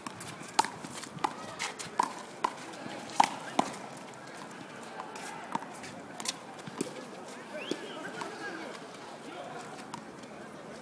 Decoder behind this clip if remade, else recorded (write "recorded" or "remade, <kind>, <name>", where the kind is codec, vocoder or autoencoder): recorded